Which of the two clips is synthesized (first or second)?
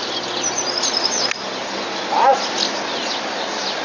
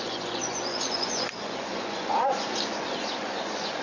second